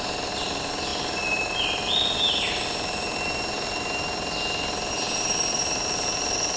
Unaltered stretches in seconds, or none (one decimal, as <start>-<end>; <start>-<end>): 0.0-6.6